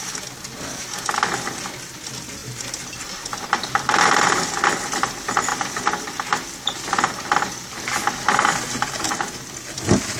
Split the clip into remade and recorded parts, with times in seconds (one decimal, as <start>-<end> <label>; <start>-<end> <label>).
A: 0.0-2.4 recorded; 2.4-4.0 remade; 4.0-10.2 recorded